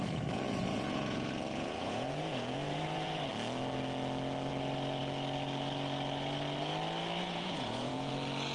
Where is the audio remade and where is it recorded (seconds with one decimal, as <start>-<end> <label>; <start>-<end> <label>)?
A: 0.0-0.7 recorded; 0.7-3.3 remade; 3.3-7.2 recorded; 7.2-8.1 remade; 8.1-8.5 recorded